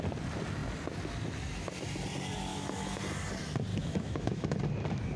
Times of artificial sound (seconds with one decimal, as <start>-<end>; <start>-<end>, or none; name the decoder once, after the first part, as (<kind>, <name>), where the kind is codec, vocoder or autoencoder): 2.5-3.0 (autoencoder, DAC-VAE); 3.7-4.6